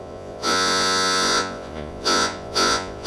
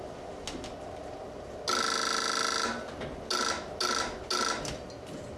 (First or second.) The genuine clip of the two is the second